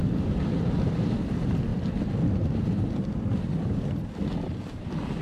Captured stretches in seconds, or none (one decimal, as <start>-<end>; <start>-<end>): 0.0-5.2